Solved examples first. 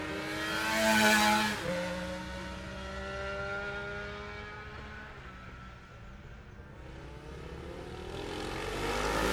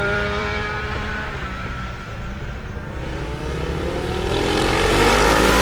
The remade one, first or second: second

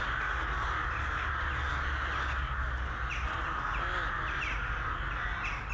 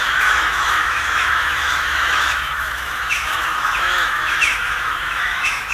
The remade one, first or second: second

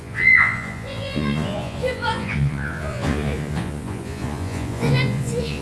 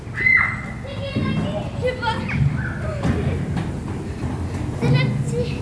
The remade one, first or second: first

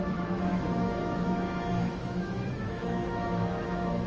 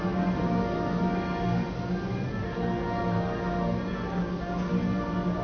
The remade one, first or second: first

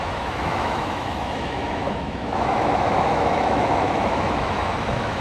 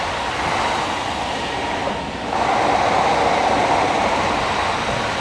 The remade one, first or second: first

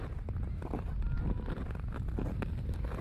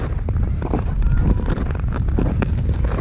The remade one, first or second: second